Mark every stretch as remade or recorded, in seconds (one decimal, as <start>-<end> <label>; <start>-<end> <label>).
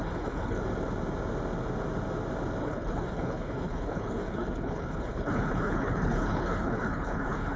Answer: 0.0-0.6 remade; 0.6-2.6 recorded; 2.6-7.6 remade